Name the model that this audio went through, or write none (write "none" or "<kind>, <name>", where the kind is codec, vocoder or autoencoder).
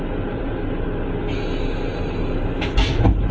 none